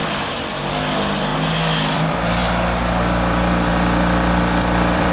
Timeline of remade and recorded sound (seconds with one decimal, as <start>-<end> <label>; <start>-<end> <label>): 0.0-1.3 remade; 1.3-1.9 recorded; 1.9-2.4 remade; 2.4-3.7 recorded; 3.7-5.1 remade